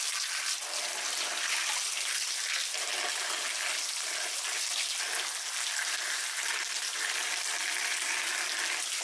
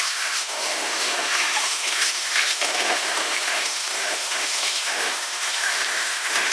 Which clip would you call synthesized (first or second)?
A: second